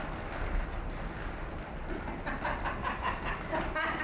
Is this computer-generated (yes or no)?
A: no